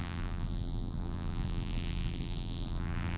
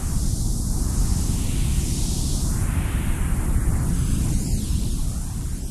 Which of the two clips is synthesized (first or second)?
first